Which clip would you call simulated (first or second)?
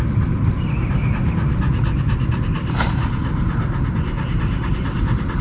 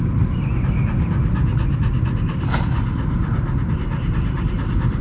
first